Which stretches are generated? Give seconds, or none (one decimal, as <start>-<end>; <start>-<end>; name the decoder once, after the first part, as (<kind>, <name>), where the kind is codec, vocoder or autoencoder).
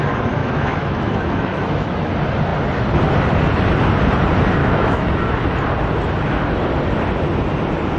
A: 0.4-2.1 (autoencoder, DAC-VAE); 4.6-5.1